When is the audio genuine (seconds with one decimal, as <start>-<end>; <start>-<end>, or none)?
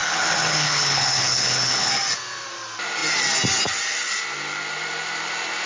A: 1.9-5.7